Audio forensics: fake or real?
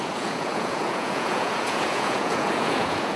fake